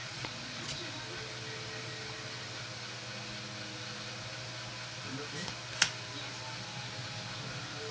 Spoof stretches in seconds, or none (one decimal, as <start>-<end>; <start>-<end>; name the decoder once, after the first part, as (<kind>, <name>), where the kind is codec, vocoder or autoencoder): 0.0-0.8 (vocoder, Vocos)

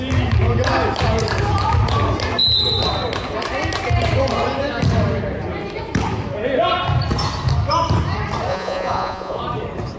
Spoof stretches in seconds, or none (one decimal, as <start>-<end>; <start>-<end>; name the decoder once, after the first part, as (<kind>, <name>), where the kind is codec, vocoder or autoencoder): 8.5-9.4 (vocoder, Vocos)

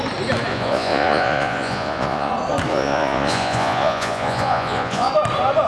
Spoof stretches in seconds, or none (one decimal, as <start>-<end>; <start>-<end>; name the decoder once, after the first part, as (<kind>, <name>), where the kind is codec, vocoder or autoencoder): 0.5-2.3 (vocoder, Vocos); 2.7-5.1

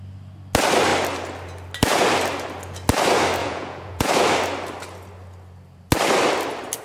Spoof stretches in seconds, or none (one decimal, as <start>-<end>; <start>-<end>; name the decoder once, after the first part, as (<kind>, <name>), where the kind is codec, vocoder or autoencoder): 3.4-4.1 (vocoder, Vocos)

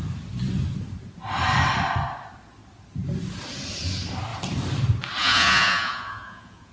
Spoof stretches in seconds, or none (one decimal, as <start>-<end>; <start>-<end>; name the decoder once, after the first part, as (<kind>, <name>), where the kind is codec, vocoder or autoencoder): 5.2-6.7 (vocoder, Vocos)

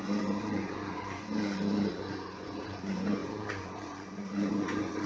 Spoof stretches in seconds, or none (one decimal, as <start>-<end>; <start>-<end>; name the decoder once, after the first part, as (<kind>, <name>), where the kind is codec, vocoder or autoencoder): 0.0-5.1 (vocoder, Vocos)